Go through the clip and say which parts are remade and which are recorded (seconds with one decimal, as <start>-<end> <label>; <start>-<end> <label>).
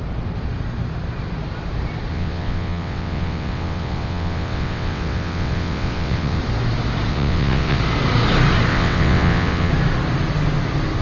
0.0-2.1 recorded; 2.1-6.4 remade; 6.4-7.1 recorded; 7.1-7.8 remade; 7.8-8.7 recorded; 8.7-9.7 remade; 9.7-11.0 recorded